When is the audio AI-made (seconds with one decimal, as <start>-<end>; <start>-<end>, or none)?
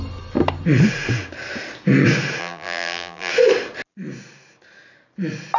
2.4-3.3